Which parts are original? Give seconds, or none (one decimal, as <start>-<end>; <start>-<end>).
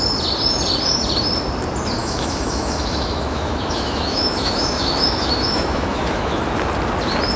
0.0-2.0; 6.4-7.4